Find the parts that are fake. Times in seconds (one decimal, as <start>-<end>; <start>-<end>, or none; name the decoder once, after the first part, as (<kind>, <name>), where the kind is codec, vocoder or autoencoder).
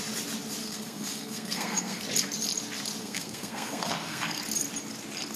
0.6-2.0 (codec, SNAC); 3.0-4.4